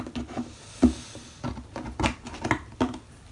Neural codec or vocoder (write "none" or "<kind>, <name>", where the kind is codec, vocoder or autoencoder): none